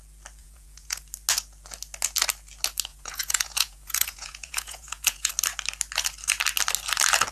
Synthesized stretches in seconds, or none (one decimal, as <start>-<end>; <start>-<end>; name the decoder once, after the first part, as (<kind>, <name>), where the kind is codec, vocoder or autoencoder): 0.4-1.0 (vocoder, Vocos); 2.9-5.3